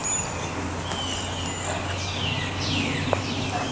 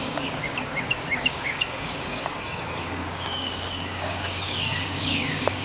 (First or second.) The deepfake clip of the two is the second